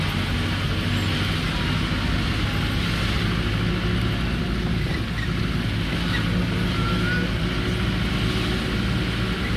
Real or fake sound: real